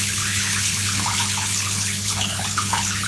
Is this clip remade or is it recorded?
remade